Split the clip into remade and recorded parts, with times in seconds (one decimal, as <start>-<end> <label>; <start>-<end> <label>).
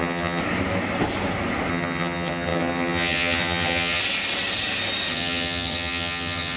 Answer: 0.0-0.4 remade; 0.4-1.7 recorded; 1.7-4.0 remade; 4.0-5.1 recorded; 5.1-6.6 remade